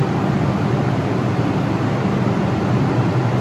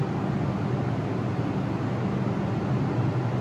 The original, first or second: second